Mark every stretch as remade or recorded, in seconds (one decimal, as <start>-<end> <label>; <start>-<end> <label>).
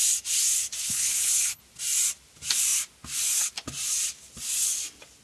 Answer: 0.0-0.8 recorded; 0.8-1.6 remade; 1.6-5.2 recorded